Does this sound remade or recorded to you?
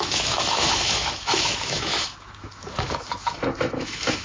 remade